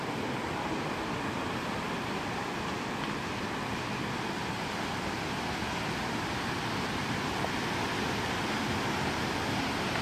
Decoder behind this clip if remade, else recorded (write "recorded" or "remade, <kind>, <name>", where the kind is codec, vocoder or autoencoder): recorded